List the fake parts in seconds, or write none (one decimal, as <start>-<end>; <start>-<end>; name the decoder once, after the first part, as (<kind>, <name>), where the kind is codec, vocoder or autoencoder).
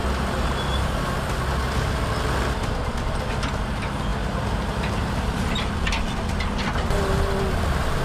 none